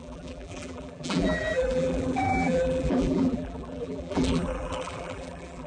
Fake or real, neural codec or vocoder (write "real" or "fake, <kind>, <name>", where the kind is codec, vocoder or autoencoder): fake, vocoder, BigVGAN v2